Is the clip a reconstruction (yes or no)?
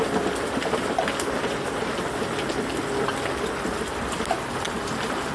no